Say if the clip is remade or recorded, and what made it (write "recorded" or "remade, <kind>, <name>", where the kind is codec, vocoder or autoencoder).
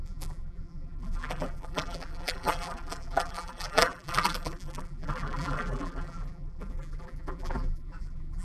remade, vocoder, BigVGAN v2